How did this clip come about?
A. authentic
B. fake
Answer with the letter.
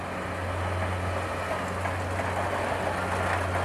A